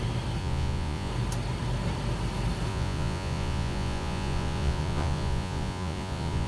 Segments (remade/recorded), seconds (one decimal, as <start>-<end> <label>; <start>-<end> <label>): 0.0-0.4 recorded; 0.4-1.1 remade; 1.1-2.7 recorded; 2.7-6.5 remade